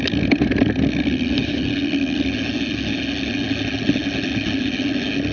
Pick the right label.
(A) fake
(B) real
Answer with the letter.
B